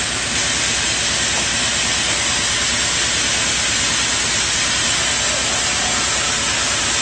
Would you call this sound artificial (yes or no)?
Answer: no